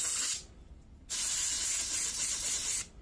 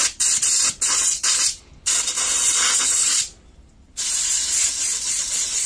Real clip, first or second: first